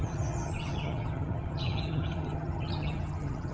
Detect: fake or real fake